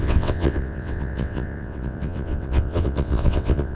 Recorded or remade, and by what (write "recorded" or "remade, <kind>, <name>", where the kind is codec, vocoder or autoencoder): remade, vocoder, WaveNeXt